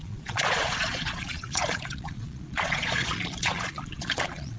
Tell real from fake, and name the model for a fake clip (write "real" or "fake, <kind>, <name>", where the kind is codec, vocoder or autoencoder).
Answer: fake, vocoder, Vocos